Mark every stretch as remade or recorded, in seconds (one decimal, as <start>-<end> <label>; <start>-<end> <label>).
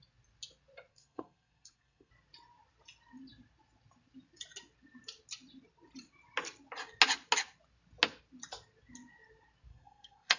0.0-0.9 recorded; 0.9-2.1 remade; 2.1-9.7 recorded; 9.7-10.4 remade